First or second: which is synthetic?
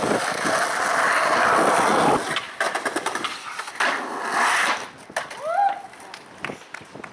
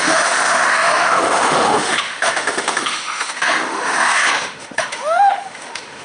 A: second